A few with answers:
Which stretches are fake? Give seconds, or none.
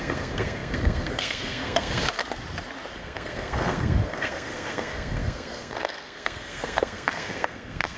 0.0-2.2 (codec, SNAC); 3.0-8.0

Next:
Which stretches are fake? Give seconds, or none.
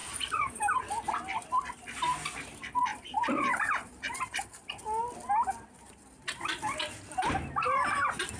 0.0-1.1 (vocoder, BigVGAN v2); 2.9-4.6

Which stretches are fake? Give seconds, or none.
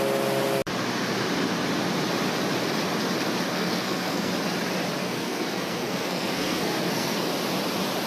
3.5-4.3 (codec, SNAC); 5.0-7.3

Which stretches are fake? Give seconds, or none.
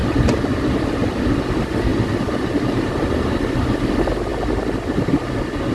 0.0-1.2 (vocoder, BigVGAN v2); 1.9-3.4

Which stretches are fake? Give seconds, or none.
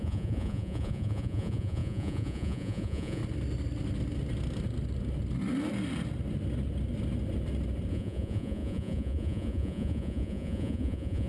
0.0-3.2 (vocoder, Vocos); 7.9-11.3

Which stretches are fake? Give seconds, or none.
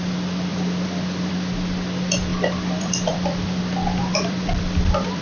0.5-1.3 (vocoder, BigVGAN v2); 2.3-3.6; 4.1-5.2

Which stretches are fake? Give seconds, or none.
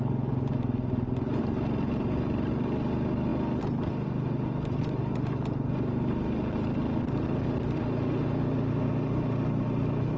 none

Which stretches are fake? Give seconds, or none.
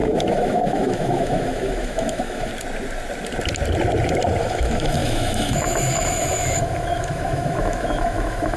0.0-2.5 (autoencoder, DAC-VAE); 4.4-8.6